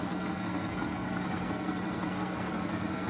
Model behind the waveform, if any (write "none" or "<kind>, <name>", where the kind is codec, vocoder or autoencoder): codec, SNAC